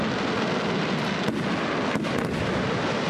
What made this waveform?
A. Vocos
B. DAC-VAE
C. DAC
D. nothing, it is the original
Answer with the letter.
D